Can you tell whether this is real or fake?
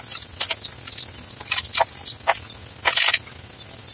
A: real